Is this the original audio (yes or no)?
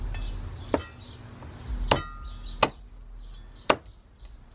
yes